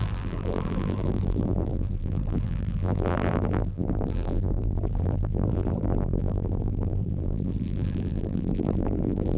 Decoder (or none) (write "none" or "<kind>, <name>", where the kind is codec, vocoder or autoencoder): vocoder, BigVGAN v2